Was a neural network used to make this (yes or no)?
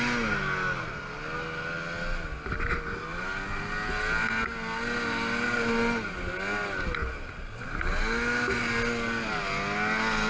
no